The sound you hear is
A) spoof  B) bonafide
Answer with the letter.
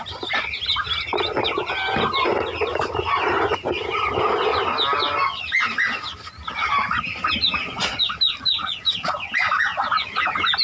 B